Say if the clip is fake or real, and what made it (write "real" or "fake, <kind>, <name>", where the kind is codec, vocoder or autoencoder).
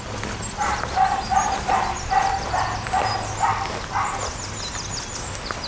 real